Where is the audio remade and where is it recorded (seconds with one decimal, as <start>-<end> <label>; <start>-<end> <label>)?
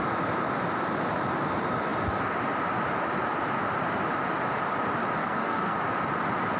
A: 0.0-5.2 recorded; 5.2-5.8 remade; 5.8-6.6 recorded